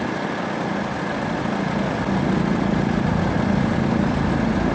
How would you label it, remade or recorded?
recorded